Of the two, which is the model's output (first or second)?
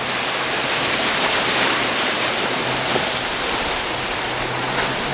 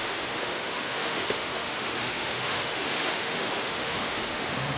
second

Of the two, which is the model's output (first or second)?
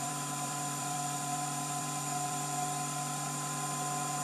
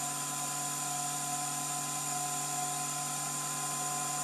first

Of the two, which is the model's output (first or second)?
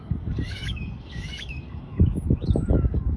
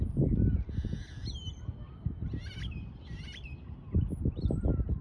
first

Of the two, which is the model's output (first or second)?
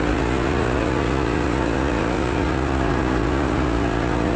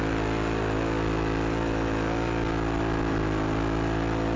first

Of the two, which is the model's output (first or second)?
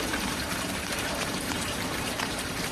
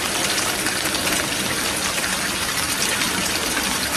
first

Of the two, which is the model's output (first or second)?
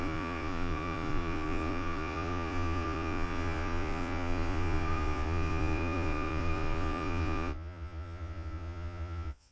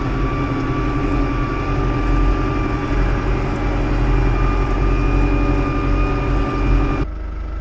first